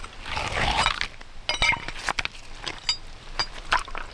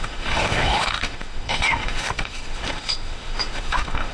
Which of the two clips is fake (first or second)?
second